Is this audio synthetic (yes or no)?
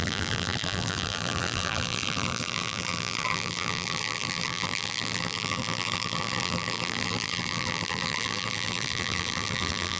yes